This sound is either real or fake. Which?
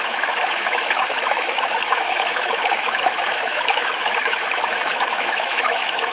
fake